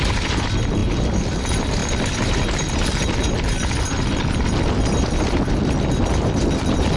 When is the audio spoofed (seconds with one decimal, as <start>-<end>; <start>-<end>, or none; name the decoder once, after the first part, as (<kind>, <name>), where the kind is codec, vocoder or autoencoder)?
none